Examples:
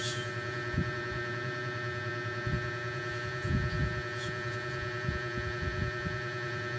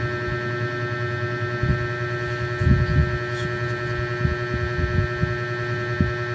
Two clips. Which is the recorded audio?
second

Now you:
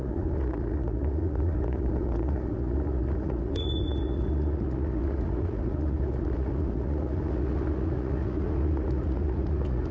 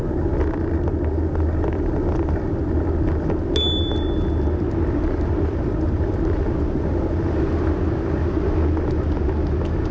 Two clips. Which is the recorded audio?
second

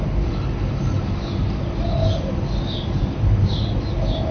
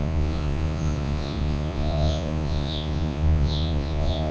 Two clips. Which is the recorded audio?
first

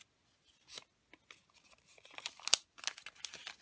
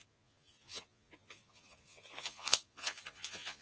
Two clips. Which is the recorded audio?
first